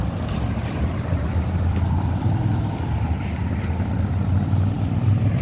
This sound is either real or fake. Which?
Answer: real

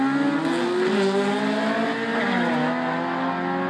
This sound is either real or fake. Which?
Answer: real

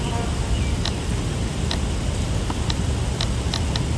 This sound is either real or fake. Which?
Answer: real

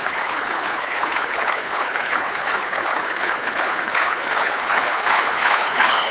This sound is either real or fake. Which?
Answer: fake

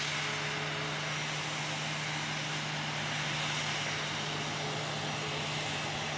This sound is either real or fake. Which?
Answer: real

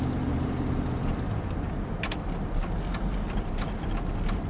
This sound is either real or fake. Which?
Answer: real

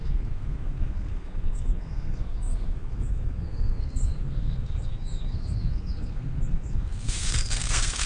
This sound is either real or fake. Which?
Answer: fake